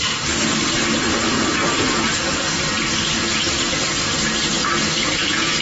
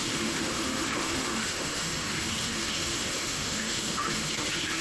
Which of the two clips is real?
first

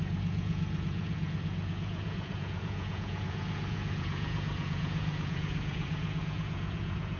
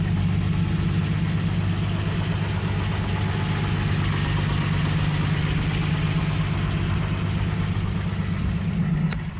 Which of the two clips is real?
second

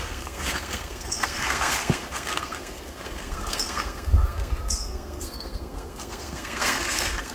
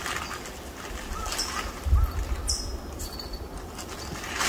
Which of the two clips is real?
second